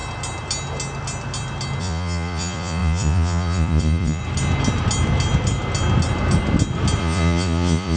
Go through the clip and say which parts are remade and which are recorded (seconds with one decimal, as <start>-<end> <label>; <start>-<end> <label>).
0.0-1.8 recorded; 1.8-4.2 remade; 4.2-7.0 recorded; 7.0-8.0 remade